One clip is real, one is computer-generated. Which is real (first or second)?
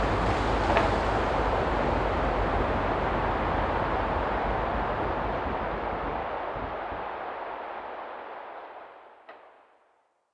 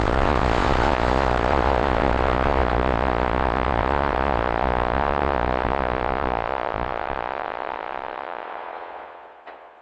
first